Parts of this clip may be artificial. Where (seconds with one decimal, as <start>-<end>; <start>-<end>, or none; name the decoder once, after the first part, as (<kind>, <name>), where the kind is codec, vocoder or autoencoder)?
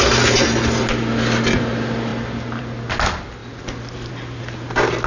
none